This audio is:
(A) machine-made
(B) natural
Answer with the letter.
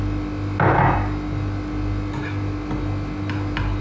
B